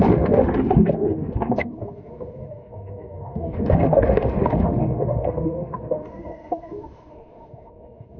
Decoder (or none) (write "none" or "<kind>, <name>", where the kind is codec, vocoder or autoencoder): autoencoder, DAC-VAE